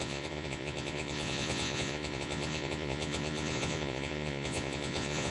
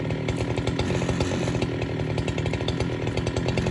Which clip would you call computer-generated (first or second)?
first